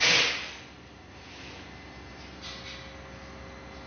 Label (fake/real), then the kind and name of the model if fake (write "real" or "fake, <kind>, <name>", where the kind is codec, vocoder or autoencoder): real